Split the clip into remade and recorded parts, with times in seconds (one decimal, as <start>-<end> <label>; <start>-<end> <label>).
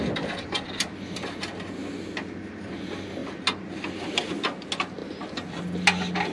0.0-6.3 recorded